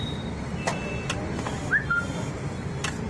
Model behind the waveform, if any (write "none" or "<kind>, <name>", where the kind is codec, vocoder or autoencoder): none